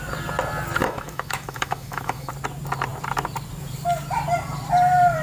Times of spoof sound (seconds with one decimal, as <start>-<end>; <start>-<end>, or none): 0.8-2.3